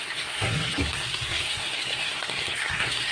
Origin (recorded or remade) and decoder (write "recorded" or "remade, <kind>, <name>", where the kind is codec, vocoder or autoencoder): remade, codec, SNAC